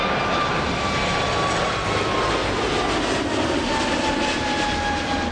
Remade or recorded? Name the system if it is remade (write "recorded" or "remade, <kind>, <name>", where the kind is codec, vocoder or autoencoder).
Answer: recorded